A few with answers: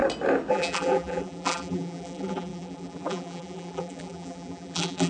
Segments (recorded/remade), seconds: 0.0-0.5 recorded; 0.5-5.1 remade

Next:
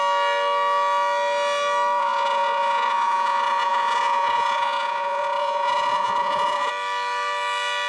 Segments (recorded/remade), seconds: 0.0-2.0 recorded; 2.0-6.7 remade; 6.7-7.9 recorded

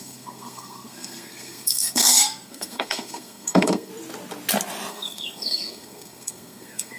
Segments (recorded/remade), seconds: 0.0-3.9 remade; 3.9-4.9 recorded; 4.9-7.0 remade

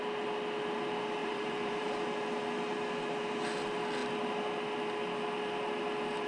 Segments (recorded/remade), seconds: 0.0-1.2 recorded; 1.2-1.9 remade; 1.9-6.3 recorded